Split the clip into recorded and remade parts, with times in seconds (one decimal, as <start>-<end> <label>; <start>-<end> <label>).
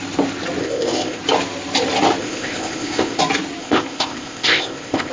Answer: 0.0-0.6 recorded; 0.6-1.2 remade; 1.2-2.2 recorded; 2.2-3.2 remade; 3.2-3.6 recorded; 3.6-5.1 remade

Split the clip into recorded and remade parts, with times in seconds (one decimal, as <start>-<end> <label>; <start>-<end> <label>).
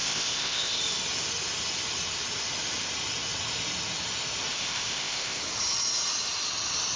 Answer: 0.0-0.8 remade; 0.8-4.5 recorded; 4.5-5.4 remade; 5.4-7.0 recorded